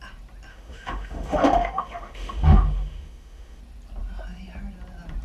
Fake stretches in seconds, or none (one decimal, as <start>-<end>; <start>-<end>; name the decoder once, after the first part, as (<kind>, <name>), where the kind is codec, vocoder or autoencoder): 0.5-3.6 (autoencoder, DAC-VAE)